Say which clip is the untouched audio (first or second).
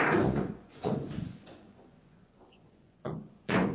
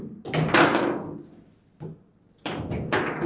second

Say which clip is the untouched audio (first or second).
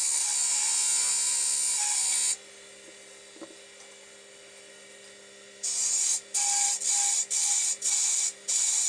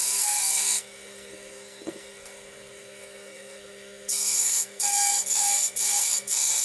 first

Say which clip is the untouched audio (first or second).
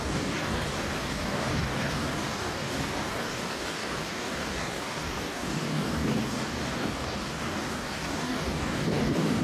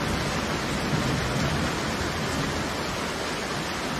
second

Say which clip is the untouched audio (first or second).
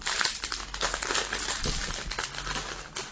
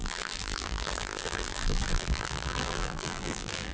first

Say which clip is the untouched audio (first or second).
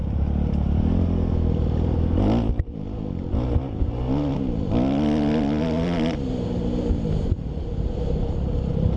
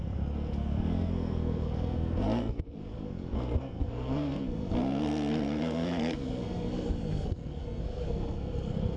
first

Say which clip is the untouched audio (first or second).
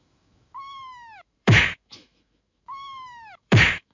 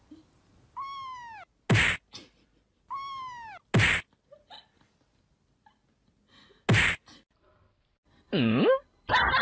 second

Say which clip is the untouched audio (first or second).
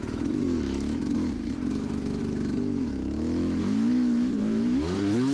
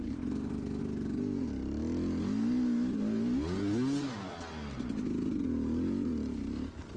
second